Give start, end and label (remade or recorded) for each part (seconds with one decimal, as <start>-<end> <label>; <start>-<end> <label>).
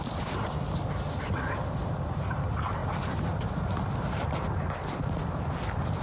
0.0-6.0 recorded